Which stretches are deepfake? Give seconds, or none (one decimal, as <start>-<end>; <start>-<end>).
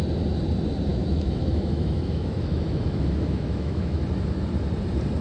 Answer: 0.9-4.0